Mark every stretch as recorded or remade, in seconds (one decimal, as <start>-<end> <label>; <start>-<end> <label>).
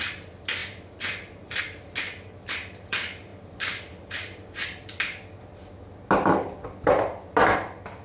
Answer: 0.0-3.3 recorded; 3.3-4.6 remade; 4.6-8.0 recorded